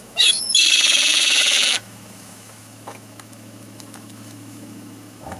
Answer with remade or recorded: remade